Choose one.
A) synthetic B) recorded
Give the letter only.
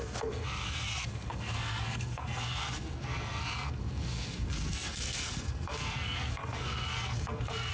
A